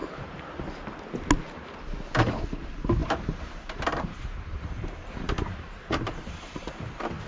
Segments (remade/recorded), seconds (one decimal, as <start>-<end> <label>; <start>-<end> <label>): 0.0-0.6 remade; 0.6-3.0 recorded; 3.0-6.7 remade; 6.7-7.3 recorded